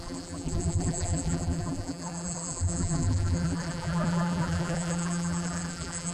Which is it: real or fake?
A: fake